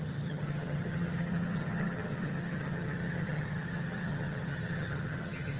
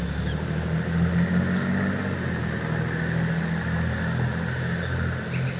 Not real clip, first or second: first